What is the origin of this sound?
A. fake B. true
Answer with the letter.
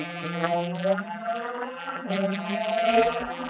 A